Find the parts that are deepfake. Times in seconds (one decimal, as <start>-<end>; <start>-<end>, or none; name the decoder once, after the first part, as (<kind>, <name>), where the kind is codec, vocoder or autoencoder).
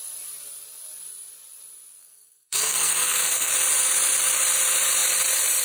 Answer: 2.0-3.5 (codec, SNAC)